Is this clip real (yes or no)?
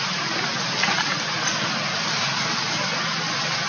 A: yes